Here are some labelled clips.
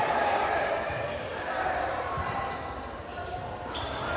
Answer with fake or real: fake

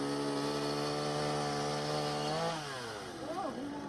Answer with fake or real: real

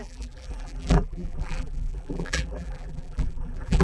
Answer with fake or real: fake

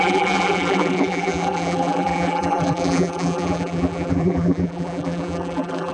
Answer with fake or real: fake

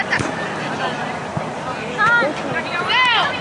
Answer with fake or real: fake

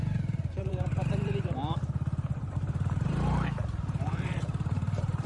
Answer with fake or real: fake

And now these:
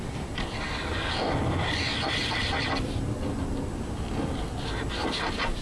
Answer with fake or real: fake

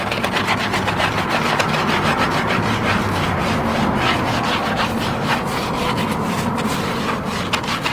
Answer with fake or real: real